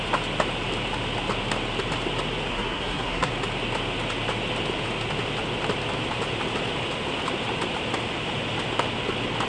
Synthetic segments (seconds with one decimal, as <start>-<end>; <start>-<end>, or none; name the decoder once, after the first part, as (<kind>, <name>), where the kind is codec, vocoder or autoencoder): 2.5-3.3 (codec, SNAC)